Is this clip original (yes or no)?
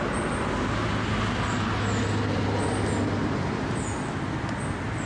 yes